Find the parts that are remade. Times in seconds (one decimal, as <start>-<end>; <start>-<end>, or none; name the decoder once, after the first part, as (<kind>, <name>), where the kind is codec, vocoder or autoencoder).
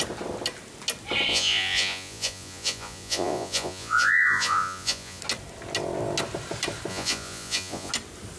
1.3-5.2 (vocoder, Vocos); 6.9-7.9